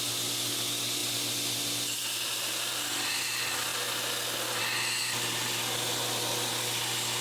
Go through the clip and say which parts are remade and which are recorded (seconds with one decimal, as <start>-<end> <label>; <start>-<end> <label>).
0.0-7.2 recorded